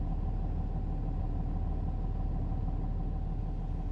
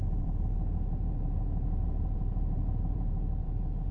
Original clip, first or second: first